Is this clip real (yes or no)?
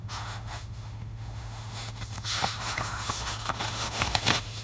no